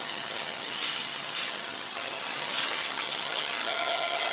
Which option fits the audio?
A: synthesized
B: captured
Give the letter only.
A